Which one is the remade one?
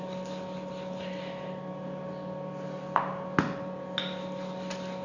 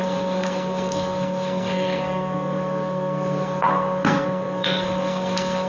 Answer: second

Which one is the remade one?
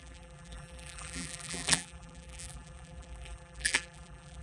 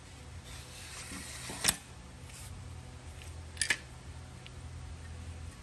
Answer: first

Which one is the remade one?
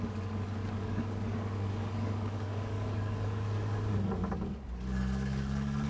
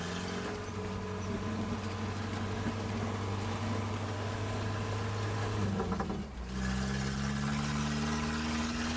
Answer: first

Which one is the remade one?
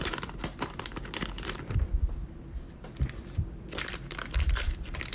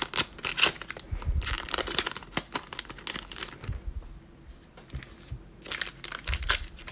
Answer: first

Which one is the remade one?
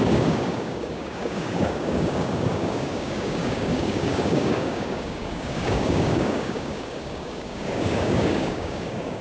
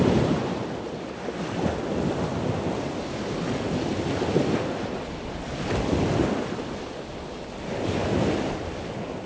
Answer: first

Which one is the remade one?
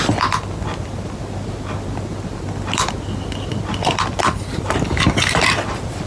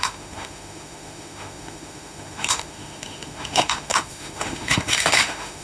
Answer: second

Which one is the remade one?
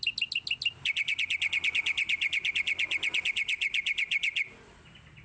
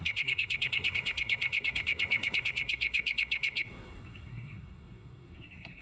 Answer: second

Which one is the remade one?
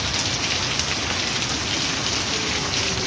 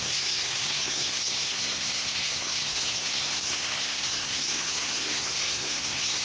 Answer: second